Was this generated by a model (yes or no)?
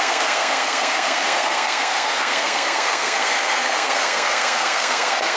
yes